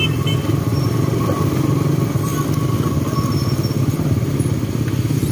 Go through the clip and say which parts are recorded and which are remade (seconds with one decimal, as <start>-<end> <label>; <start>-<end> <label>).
0.0-5.3 remade

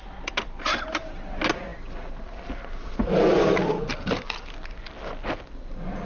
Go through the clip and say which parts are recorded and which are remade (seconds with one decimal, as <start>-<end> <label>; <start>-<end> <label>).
0.0-6.0 recorded

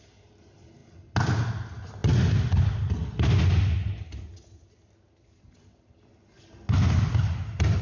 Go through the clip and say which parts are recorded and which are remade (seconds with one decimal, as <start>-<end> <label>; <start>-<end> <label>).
0.0-7.8 recorded

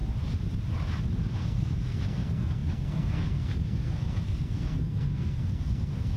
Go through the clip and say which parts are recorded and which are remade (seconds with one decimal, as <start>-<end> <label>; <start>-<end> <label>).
0.0-1.4 recorded; 1.4-6.2 remade

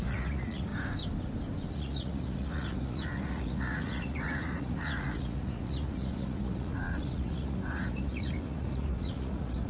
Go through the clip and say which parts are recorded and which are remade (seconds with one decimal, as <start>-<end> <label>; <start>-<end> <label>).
0.0-0.7 remade; 0.7-1.7 recorded; 1.7-9.7 remade

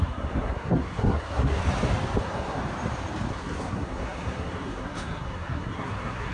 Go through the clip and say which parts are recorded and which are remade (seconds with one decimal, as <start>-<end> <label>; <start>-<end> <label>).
0.0-1.6 remade; 1.6-2.2 recorded; 2.2-2.6 remade; 2.6-3.3 recorded; 3.3-6.3 remade

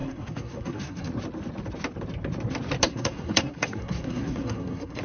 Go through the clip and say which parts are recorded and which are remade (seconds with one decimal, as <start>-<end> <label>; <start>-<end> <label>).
0.0-1.1 remade; 1.1-2.9 recorded; 2.9-5.0 remade